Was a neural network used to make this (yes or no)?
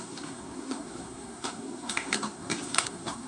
yes